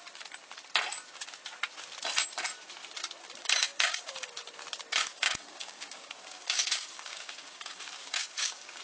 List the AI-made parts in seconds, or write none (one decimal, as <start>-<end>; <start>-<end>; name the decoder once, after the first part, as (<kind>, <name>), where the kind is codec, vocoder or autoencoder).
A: 3.4-4.3 (codec, DAC); 5.0-8.8